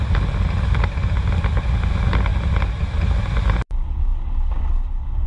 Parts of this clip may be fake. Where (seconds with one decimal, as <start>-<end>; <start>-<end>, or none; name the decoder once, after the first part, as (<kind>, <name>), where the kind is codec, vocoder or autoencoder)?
none